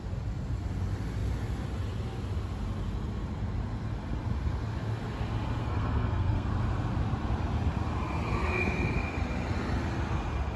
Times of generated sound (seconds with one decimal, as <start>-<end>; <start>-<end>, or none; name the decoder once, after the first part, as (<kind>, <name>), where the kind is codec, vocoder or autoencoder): 5.6-6.5 (codec, SNAC)